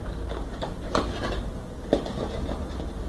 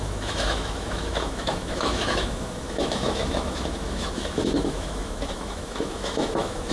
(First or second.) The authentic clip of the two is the first